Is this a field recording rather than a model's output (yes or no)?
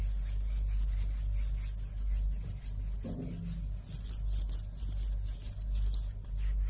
yes